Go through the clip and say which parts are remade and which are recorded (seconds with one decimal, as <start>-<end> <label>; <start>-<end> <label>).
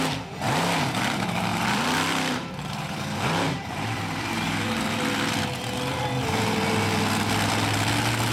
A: 0.0-1.5 recorded; 1.5-4.3 remade; 4.3-8.3 recorded